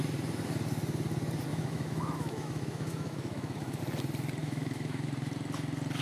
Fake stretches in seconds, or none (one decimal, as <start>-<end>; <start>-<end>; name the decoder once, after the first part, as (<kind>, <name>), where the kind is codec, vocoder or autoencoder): 1.5-3.8 (autoencoder, DAC-VAE); 4.4-5.1